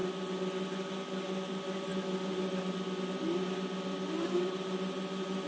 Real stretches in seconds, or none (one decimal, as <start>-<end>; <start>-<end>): 0.0-5.5